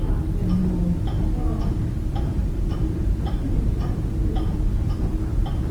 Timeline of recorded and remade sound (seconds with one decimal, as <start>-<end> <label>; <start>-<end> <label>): 0.0-2.4 recorded; 2.4-4.9 remade; 4.9-5.7 recorded